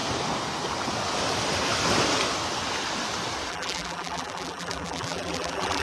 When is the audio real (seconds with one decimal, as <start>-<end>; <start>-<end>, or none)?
0.0-3.5

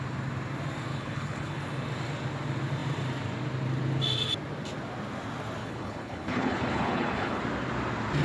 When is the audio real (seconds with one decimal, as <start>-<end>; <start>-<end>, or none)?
0.0-0.9; 1.6-5.6; 7.4-8.2

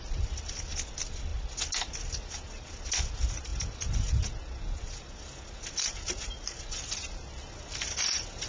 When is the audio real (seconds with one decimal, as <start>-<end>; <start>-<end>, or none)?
0.0-8.5

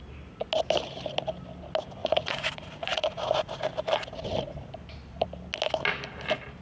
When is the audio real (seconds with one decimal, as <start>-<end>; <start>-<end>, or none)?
0.0-2.0; 3.6-6.6

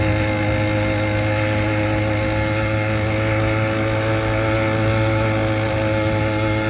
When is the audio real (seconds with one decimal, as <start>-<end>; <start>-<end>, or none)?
0.0-6.7

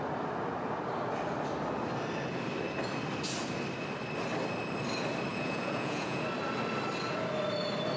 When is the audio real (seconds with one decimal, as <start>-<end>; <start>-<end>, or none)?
0.0-5.3; 6.2-8.0

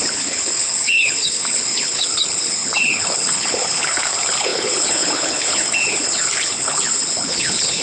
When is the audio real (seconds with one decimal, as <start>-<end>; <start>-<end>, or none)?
none